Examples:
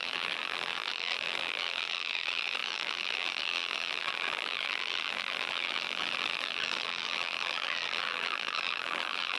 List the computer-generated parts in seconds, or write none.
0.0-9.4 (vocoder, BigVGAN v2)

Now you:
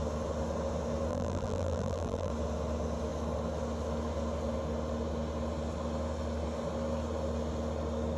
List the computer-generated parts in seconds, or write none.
1.1-2.3 (vocoder, BigVGAN v2)

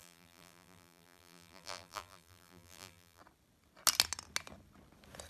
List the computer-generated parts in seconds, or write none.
0.0-3.2 (vocoder, BigVGAN v2)